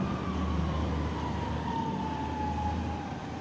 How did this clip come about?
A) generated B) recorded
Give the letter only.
B